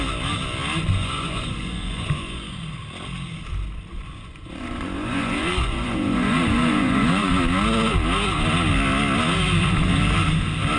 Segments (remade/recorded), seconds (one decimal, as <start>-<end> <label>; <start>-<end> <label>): 0.0-1.0 recorded; 1.0-2.8 remade; 2.8-3.9 recorded; 3.9-7.3 remade; 7.3-10.8 recorded